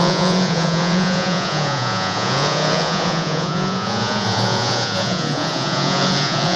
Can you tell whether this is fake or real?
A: fake